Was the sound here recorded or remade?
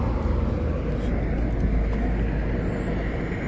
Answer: recorded